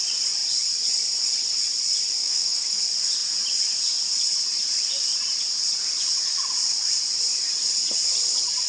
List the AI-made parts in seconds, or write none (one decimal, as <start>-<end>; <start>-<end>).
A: 2.2-2.8